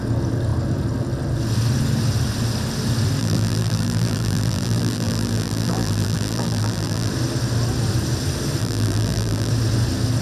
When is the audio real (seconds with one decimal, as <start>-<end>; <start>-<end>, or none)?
0.0-3.2; 7.1-8.6; 9.5-10.2